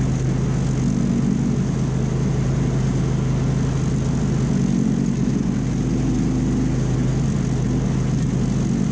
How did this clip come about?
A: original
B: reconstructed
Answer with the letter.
A